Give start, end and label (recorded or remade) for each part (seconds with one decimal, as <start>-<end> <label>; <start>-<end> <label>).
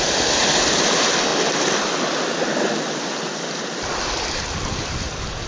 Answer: 0.0-5.5 recorded